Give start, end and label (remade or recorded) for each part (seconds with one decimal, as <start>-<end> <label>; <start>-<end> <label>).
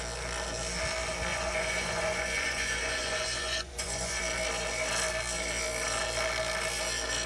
0.0-1.3 recorded; 1.3-4.2 remade; 4.2-7.3 recorded